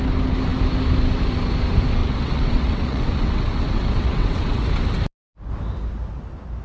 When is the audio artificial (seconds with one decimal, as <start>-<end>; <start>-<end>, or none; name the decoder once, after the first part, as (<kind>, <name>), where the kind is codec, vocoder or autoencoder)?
2.0-4.6 (vocoder, WaveNeXt)